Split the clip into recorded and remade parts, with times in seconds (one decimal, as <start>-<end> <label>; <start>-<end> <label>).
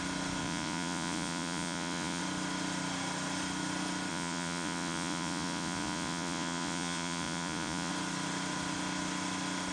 0.0-0.4 recorded; 0.4-2.2 remade; 2.2-4.1 recorded; 4.1-7.9 remade; 7.9-9.7 recorded